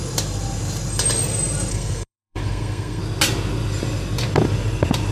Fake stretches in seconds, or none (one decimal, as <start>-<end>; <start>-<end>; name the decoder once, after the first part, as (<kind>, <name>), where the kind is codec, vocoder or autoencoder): 1.7-3.0 (codec, SNAC)